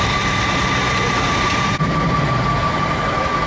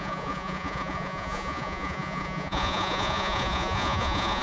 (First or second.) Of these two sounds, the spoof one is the second